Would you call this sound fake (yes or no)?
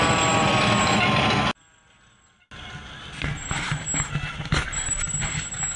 no